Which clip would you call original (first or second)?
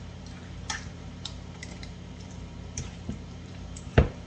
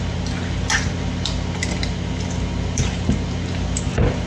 second